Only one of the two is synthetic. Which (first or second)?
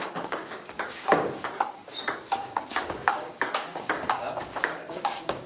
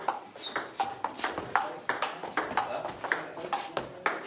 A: first